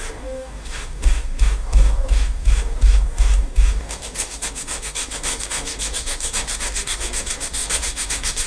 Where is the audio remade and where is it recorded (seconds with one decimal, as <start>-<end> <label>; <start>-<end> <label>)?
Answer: 0.0-8.5 remade

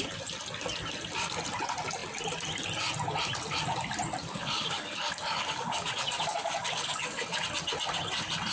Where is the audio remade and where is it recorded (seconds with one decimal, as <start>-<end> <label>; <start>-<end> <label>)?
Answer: 0.0-4.2 recorded; 4.2-7.4 remade; 7.4-8.5 recorded

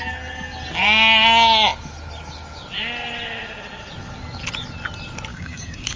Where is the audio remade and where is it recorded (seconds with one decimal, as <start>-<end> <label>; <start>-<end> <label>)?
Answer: 0.0-5.3 recorded; 5.3-6.0 remade

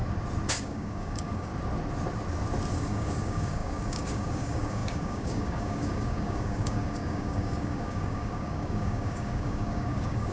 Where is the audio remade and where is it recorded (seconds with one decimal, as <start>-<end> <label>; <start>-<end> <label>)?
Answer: 0.0-0.5 recorded; 0.5-1.5 remade; 1.5-2.7 recorded; 2.7-10.3 remade

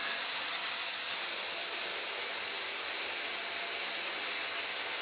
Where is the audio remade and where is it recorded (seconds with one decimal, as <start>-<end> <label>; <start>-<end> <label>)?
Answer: 0.0-5.0 recorded

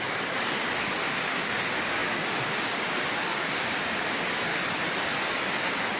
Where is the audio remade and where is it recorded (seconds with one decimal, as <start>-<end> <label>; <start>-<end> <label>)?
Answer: 0.0-4.5 remade; 4.5-5.3 recorded; 5.3-6.0 remade

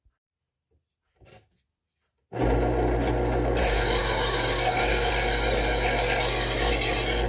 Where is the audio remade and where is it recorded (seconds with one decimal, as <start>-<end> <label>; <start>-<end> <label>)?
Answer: 0.0-4.0 recorded; 4.0-5.1 remade; 5.1-7.3 recorded

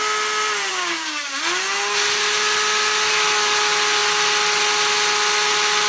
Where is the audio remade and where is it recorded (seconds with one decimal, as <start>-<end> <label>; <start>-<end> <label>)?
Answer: 0.0-0.7 recorded; 0.7-1.4 remade; 1.4-5.9 recorded